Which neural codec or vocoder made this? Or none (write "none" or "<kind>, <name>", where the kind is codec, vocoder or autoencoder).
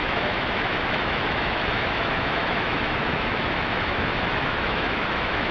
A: autoencoder, DAC-VAE